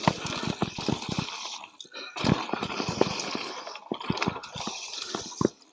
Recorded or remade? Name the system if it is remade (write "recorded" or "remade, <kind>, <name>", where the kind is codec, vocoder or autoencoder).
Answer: recorded